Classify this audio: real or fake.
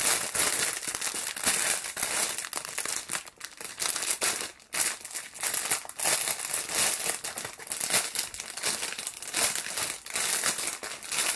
real